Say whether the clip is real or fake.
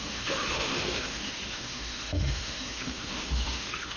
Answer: fake